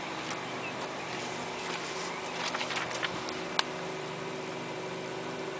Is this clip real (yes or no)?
yes